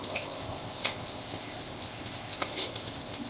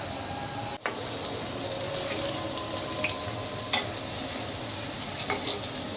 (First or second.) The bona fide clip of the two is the second